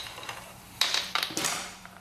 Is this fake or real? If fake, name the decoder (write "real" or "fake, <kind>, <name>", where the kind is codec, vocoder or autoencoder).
fake, vocoder, BigVGAN v2